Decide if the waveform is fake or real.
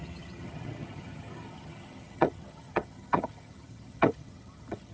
fake